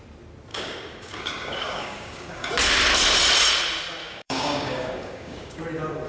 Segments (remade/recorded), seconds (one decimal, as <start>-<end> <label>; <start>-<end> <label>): 0.0-0.5 recorded; 0.5-2.5 remade; 2.5-4.0 recorded; 4.0-5.6 remade; 5.6-6.1 recorded